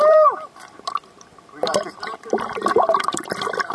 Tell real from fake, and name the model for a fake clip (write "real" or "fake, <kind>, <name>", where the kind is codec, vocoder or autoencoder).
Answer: fake, vocoder, BigVGAN v2